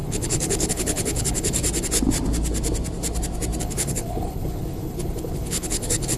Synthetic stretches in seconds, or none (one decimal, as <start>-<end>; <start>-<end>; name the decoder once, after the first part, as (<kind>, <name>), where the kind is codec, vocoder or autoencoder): 0.0-1.6 (codec, HILCodec); 3.6-6.2